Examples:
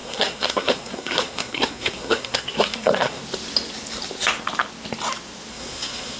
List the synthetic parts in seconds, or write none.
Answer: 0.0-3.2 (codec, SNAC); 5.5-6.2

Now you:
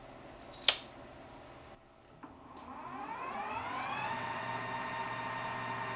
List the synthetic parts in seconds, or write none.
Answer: 3.0-4.4 (vocoder, WaveNeXt)

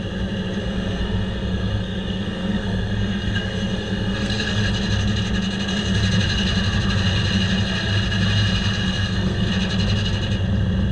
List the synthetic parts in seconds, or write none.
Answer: 0.6-4.6 (codec, SNAC); 8.8-9.5